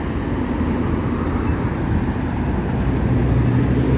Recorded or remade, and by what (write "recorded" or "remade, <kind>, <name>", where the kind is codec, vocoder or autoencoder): recorded